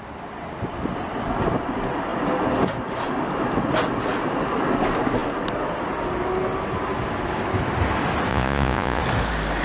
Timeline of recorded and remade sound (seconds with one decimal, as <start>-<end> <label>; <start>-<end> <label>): 0.0-8.3 recorded; 8.3-9.0 remade; 9.0-9.6 recorded